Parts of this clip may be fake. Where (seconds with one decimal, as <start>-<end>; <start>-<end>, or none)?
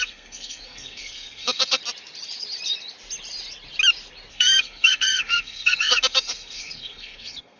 0.0-1.8; 4.3-7.6